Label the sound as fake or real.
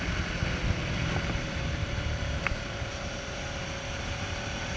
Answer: real